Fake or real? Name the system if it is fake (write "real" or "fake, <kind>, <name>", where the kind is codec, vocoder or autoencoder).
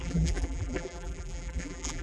fake, vocoder, BigVGAN v2